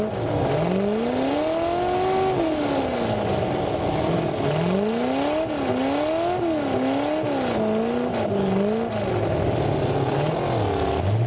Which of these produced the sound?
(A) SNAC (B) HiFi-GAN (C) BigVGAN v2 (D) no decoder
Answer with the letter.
D